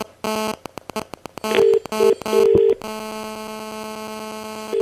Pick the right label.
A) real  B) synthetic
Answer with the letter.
A